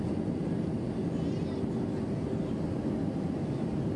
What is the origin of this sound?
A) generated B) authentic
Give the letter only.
B